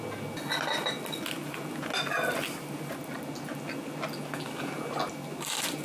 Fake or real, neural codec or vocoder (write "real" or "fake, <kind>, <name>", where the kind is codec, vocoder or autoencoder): real